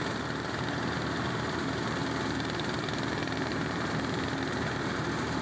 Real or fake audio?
fake